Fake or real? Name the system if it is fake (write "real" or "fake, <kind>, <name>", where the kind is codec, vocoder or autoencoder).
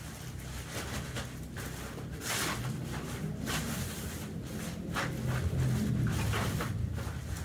real